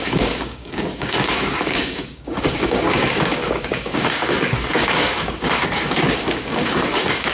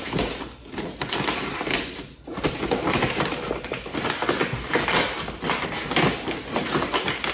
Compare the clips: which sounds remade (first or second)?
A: first